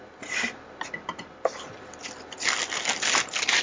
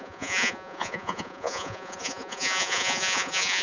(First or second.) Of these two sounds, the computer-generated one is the second